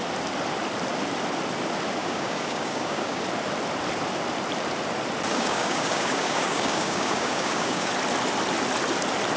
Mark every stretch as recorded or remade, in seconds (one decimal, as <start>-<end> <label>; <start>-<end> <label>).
0.0-2.0 recorded; 2.0-3.2 remade; 3.2-5.3 recorded; 5.3-7.9 remade; 7.9-9.4 recorded